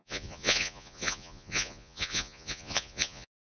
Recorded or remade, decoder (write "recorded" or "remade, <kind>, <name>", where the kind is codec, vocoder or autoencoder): remade, vocoder, Vocos